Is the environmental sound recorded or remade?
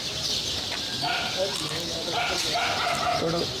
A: recorded